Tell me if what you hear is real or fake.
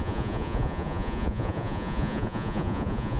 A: fake